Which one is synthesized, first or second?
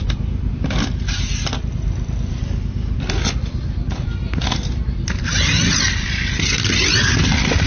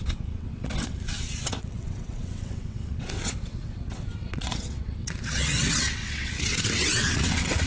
second